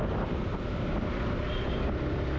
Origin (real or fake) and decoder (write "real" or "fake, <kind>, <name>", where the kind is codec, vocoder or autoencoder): real